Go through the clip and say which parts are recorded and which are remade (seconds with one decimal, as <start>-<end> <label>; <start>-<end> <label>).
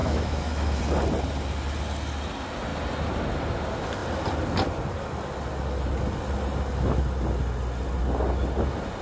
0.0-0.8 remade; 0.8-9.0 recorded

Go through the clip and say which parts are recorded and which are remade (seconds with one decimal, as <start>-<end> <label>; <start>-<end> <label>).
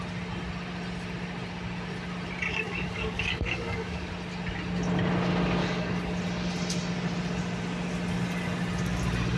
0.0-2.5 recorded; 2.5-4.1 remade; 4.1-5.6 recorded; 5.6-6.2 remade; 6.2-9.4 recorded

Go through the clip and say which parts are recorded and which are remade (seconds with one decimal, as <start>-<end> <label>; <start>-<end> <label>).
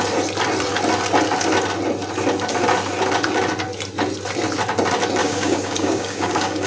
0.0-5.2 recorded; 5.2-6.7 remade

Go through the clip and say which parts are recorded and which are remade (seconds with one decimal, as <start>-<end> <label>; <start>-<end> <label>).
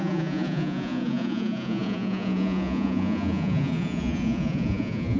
0.0-5.2 remade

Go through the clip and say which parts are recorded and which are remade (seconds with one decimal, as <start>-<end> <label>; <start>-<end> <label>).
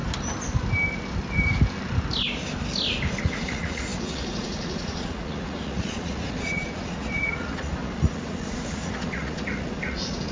0.0-3.2 recorded; 3.2-10.3 remade